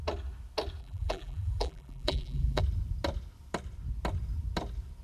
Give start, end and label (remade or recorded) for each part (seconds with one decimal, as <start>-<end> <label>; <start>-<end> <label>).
0.0-0.8 recorded; 0.8-2.6 remade; 2.6-5.0 recorded